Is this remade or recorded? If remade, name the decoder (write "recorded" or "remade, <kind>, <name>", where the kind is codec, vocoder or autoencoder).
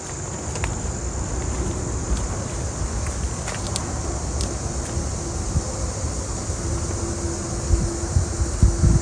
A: recorded